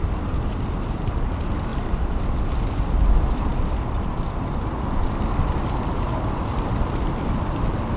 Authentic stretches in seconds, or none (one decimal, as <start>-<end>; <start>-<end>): 0.0-8.0